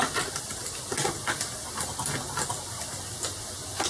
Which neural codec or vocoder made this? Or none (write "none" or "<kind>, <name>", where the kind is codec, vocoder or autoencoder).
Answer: none